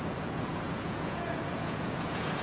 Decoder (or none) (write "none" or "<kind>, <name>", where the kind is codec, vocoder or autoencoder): vocoder, Vocos